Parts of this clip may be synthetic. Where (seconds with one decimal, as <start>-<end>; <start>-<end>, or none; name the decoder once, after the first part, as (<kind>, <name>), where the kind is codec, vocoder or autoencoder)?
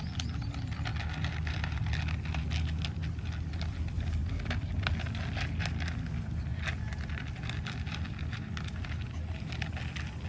none